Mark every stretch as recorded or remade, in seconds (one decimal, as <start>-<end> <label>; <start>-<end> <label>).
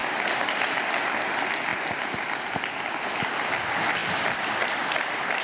0.0-5.4 recorded